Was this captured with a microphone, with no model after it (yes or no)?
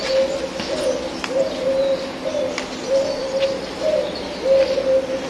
yes